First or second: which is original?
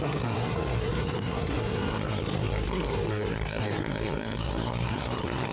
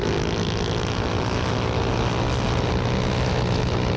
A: second